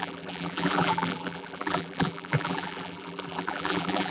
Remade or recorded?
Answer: remade